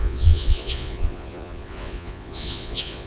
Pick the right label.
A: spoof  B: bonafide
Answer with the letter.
A